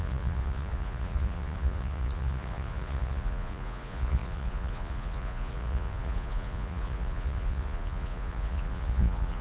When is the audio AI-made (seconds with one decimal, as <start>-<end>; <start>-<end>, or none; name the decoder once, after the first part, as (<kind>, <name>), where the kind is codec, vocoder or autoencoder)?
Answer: 0.0-9.4 (vocoder, Vocos)